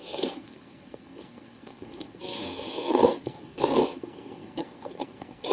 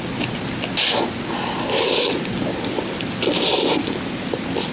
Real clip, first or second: second